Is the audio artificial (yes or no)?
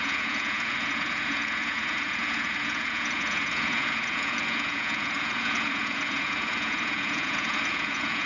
yes